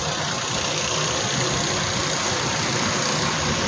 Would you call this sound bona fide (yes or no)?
yes